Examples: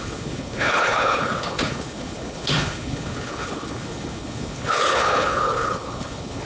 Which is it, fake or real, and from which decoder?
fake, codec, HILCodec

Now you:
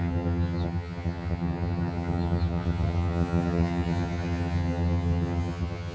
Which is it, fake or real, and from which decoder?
fake, vocoder, HiFi-GAN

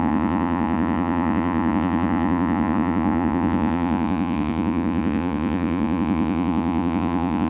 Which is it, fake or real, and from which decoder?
fake, vocoder, Vocos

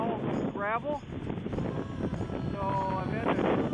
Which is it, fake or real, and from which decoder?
real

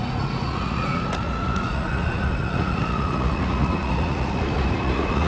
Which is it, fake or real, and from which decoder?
fake, vocoder, Vocos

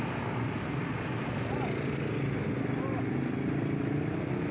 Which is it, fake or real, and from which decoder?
real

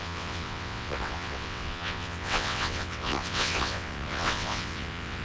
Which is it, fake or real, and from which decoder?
fake, vocoder, WaveNeXt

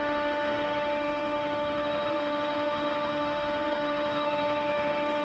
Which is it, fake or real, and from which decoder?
fake, autoencoder, DAC-VAE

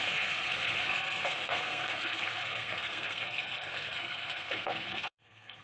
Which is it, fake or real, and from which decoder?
fake, codec, SNAC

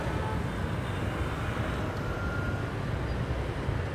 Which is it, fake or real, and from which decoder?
real